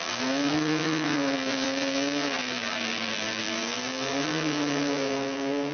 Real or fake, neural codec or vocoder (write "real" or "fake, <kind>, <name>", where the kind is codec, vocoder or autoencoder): fake, vocoder, BigVGAN v2